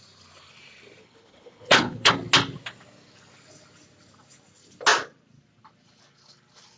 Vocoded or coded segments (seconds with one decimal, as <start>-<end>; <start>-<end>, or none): 1.0-2.1